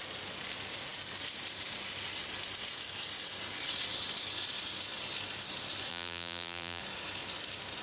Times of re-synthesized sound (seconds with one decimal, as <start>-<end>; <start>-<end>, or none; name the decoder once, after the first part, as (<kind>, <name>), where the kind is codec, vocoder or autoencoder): 5.9-6.8 (vocoder, BigVGAN v2)